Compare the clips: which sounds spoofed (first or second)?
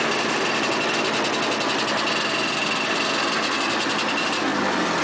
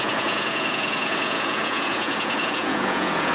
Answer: second